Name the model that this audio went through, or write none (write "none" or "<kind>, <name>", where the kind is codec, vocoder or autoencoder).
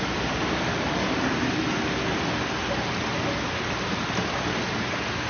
none